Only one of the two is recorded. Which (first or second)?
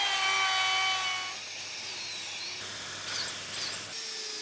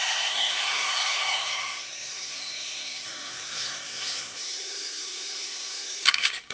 first